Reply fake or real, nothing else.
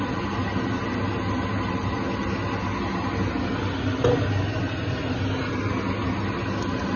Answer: real